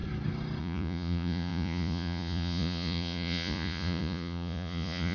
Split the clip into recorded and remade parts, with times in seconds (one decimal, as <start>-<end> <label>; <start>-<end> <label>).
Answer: 0.0-0.6 recorded; 0.6-5.1 remade